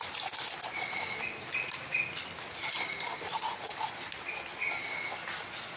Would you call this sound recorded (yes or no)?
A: yes